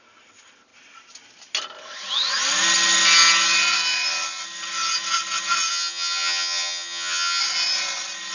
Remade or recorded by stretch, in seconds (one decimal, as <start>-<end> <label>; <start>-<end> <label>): 0.0-5.7 recorded; 5.7-7.4 remade; 7.4-8.3 recorded